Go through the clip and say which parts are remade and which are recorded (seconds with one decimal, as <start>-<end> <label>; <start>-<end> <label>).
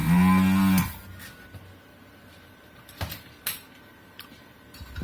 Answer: 0.0-1.9 recorded; 1.9-5.0 remade